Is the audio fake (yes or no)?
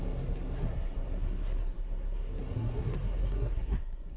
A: yes